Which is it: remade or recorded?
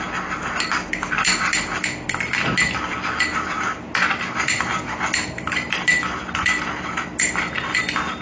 recorded